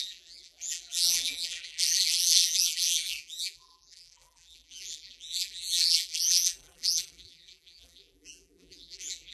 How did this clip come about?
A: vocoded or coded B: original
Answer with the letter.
A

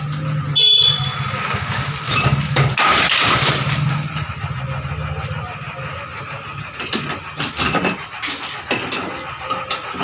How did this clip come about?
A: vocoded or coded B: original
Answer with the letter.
B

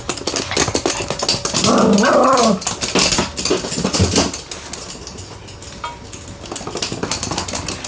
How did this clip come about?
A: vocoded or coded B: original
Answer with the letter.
B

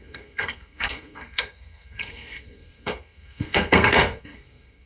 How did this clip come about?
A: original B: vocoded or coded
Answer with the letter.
B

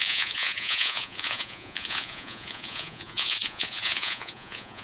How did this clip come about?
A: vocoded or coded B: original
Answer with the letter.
A